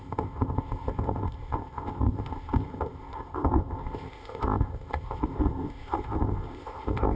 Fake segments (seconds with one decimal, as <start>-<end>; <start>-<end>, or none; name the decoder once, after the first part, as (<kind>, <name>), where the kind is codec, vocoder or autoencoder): 0.0-7.2 (codec, ZipCodec)